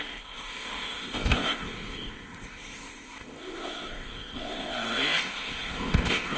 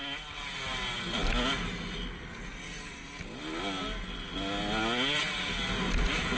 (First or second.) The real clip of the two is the second